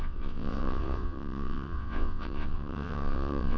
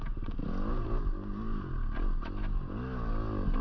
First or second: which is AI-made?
first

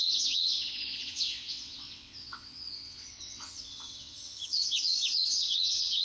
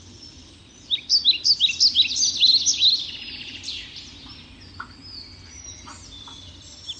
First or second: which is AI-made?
first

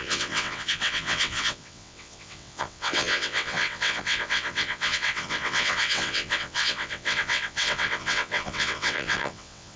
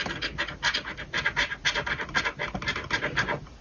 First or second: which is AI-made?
first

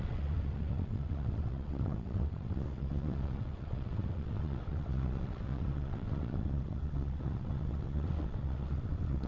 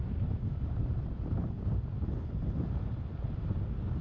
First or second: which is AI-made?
first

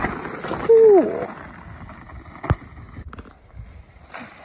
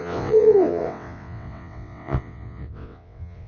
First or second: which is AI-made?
second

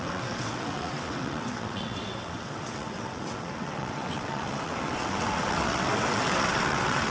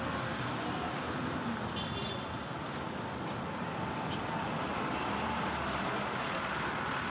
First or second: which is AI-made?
first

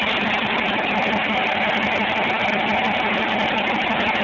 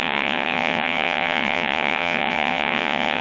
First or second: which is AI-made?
second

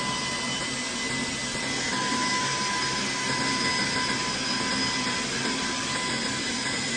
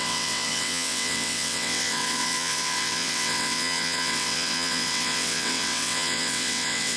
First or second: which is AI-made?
second